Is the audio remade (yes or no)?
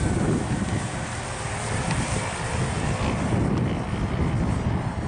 no